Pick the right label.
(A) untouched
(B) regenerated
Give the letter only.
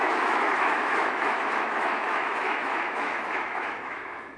B